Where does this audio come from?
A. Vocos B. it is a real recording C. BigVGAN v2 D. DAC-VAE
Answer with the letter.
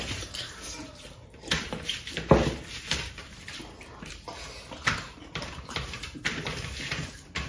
C